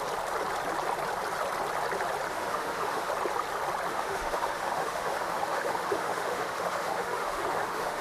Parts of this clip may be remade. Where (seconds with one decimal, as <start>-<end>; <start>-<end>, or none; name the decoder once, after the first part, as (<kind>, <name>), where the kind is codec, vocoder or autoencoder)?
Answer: 2.3-3.1 (autoencoder, DAC-VAE); 3.9-8.0